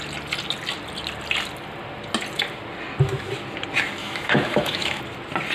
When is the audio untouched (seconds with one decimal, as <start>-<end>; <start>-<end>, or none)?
0.0-4.0; 5.0-5.5